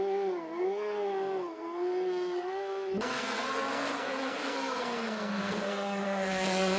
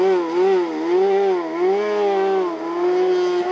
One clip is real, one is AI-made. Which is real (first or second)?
second